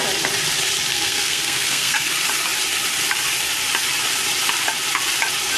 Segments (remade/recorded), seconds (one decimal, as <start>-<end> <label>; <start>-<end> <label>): 0.0-0.9 recorded; 0.9-2.1 remade; 2.1-5.6 recorded